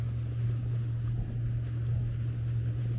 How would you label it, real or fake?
real